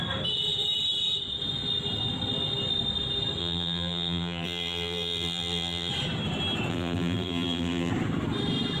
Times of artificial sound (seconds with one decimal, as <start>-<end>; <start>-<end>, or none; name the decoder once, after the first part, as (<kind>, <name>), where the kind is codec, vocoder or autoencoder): 3.4-5.9 (vocoder, BigVGAN v2); 6.7-7.9